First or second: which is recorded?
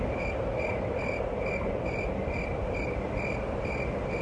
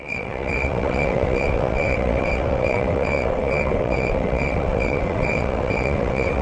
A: first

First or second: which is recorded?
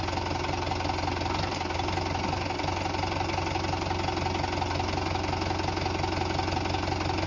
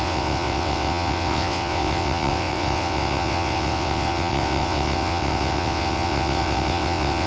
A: first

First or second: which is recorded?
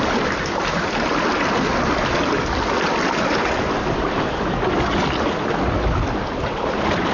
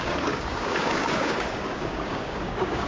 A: first